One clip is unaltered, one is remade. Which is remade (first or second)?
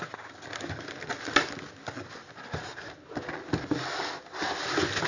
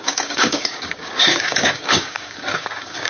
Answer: second